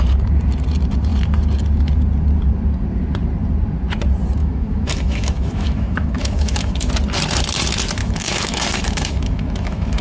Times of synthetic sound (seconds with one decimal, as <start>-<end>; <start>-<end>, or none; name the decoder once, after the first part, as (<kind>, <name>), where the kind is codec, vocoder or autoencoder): 4.4-6.9 (autoencoder, DAC-VAE); 8.0-10.0

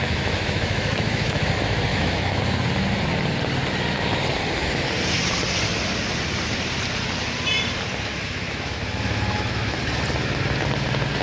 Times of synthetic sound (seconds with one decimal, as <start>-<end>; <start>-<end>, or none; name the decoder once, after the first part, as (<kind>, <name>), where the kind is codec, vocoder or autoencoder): 0.0-1.4 (autoencoder, DAC-VAE); 1.9-2.4; 8.1-9.8

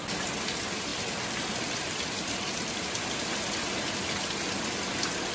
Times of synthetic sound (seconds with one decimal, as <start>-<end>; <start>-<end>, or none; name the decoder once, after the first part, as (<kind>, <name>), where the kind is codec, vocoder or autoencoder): none